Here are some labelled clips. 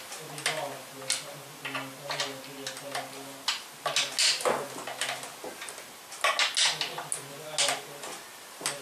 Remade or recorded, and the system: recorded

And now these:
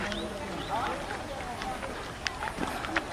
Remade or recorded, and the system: recorded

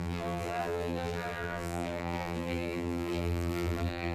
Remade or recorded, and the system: remade, vocoder, BigVGAN v2